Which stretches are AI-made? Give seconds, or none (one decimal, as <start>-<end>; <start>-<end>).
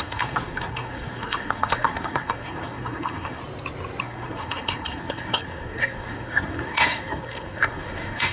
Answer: 0.0-3.4; 4.0-8.3